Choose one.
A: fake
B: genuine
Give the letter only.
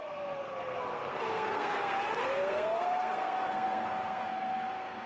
A